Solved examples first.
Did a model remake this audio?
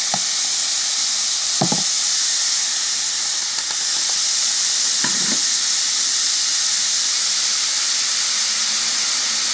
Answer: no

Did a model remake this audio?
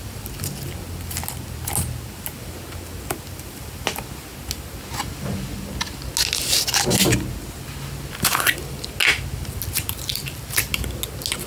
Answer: no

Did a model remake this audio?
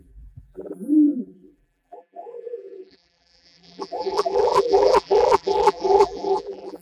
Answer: yes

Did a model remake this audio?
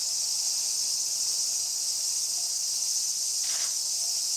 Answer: yes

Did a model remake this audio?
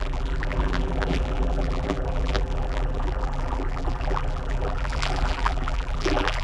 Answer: yes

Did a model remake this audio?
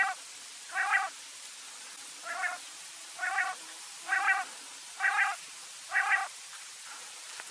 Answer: no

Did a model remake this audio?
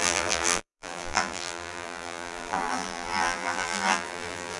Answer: yes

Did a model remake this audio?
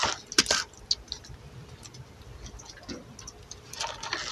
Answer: no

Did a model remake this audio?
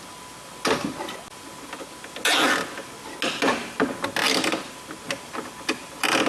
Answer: no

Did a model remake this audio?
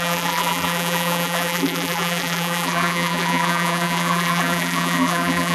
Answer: yes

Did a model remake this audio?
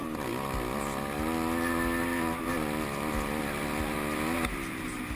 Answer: no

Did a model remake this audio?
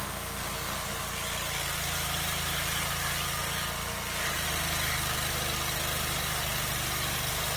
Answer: no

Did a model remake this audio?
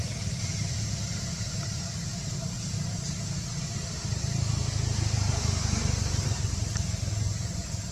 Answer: yes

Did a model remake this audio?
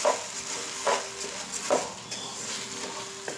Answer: no